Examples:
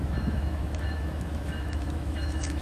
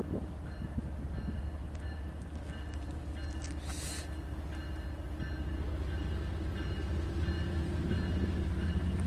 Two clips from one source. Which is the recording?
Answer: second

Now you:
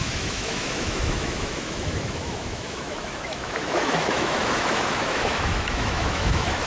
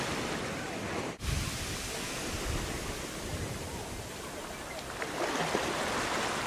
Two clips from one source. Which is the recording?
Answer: second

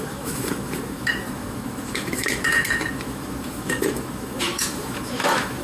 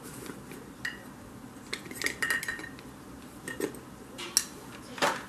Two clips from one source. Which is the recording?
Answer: second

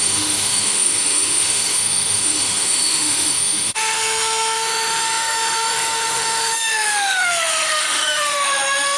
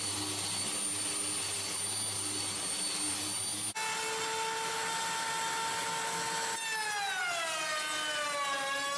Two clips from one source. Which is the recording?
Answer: second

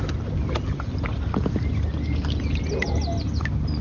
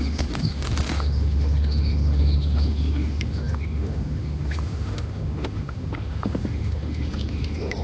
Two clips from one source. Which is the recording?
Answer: first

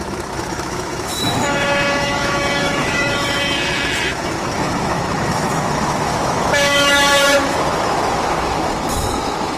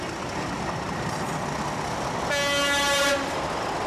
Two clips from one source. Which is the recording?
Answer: second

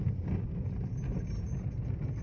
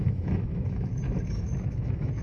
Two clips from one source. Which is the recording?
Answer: first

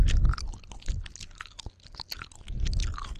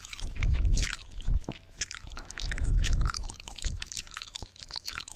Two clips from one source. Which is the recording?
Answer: first